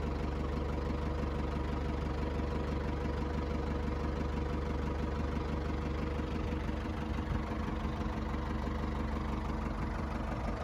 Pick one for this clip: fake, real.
real